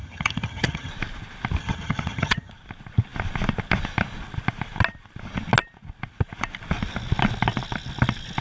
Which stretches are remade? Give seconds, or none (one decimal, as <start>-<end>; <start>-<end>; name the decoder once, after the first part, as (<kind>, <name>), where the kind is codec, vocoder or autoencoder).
0.0-0.9 (vocoder, HiFi-GAN); 1.6-2.5